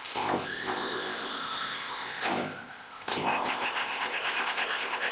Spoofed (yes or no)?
yes